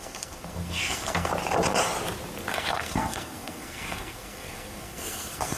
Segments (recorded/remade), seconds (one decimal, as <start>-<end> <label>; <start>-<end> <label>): 0.0-1.3 remade; 1.3-2.5 recorded; 2.5-5.6 remade